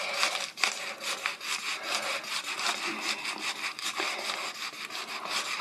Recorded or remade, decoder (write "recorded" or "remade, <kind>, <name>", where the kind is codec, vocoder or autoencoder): recorded